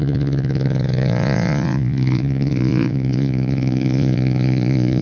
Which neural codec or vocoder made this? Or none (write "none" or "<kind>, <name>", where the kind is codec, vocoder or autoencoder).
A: vocoder, Vocos